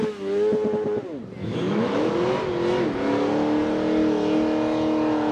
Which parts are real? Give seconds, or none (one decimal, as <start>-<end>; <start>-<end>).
0.0-1.4; 2.1-5.3

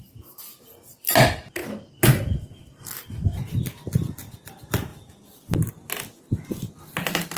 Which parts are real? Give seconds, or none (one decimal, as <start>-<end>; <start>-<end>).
0.0-7.4